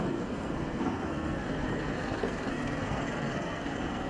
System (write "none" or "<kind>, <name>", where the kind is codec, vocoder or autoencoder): codec, SNAC